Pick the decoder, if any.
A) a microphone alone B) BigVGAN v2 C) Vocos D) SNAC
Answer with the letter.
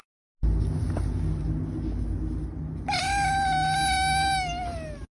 A